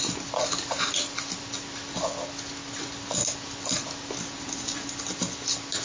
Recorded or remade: recorded